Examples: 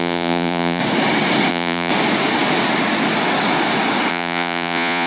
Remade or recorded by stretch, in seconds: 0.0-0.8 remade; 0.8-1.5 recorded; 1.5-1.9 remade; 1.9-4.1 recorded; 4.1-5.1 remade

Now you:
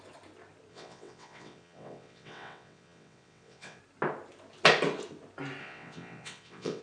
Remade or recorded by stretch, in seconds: 0.0-0.7 recorded; 0.7-3.8 remade; 3.8-5.6 recorded; 5.6-6.8 remade

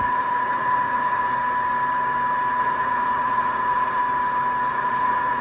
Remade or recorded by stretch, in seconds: 0.0-1.4 remade; 1.4-2.6 recorded; 2.6-4.0 remade; 4.0-4.7 recorded; 4.7-5.4 remade

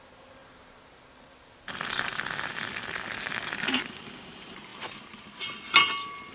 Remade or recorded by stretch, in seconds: 0.0-6.3 recorded

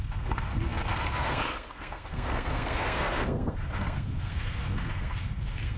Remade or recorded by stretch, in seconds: 0.0-5.8 remade

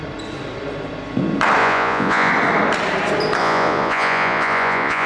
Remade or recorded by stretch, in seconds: 0.0-1.6 recorded; 1.6-2.3 remade; 2.3-3.4 recorded; 3.4-5.1 remade